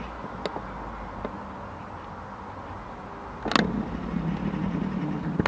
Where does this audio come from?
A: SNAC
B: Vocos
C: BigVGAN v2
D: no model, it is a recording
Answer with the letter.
D